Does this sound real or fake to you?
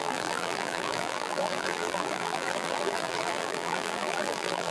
fake